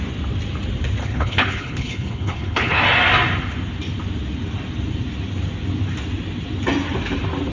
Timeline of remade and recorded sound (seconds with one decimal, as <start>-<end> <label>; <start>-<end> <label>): 0.0-1.0 recorded; 1.0-2.8 remade; 2.8-7.5 recorded